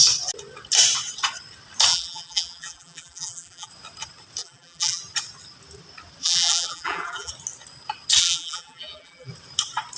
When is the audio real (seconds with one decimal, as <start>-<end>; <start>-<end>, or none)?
0.0-1.9; 3.7-4.4; 5.0-6.2; 7.3-8.2; 9.3-10.0